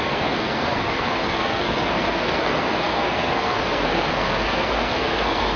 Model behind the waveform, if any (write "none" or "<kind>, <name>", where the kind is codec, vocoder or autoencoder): codec, SNAC